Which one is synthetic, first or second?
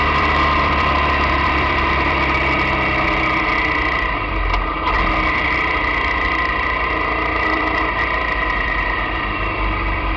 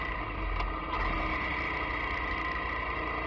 first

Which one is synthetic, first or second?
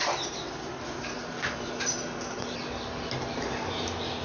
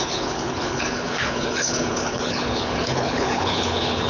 second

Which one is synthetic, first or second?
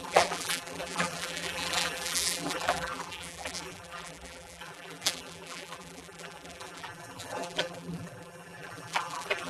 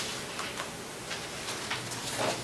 first